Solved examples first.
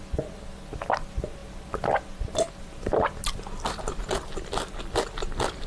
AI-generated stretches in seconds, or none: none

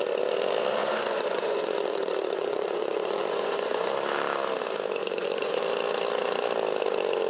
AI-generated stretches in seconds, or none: 0.8-3.9 (vocoder, Vocos); 5.0-5.6

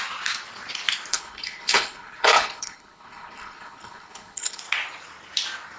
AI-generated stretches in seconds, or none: 1.1-4.6 (codec, HILCodec)

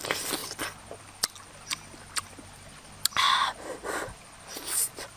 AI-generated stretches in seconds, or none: none

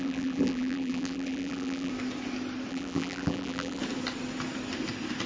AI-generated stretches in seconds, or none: 0.0-1.9 (vocoder, BigVGAN v2); 2.7-3.8

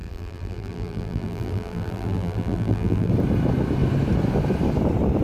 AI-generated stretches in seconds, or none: 0.0-3.1 (vocoder, BigVGAN v2)

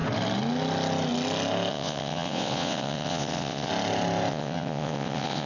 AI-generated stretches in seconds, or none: 1.7-3.7 (vocoder, WaveNeXt); 4.3-5.5

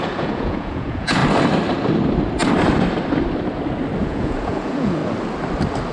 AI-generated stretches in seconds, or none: 0.0-1.2 (vocoder, Vocos); 4.0-5.0